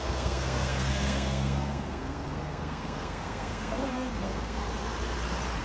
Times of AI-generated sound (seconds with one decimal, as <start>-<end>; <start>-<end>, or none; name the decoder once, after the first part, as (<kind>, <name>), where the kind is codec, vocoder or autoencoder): 0.0-4.6 (codec, SNAC)